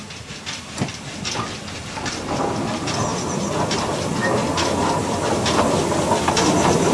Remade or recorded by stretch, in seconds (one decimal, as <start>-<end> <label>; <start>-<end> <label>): 0.0-0.9 recorded; 0.9-4.2 remade; 4.2-6.9 recorded